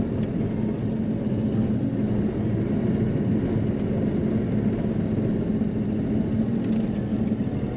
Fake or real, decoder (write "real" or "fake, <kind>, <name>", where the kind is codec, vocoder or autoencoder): real